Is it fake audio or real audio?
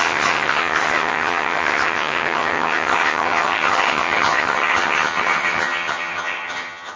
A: fake